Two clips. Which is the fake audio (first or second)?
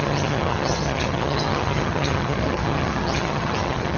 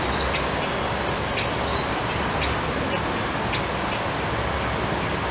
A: first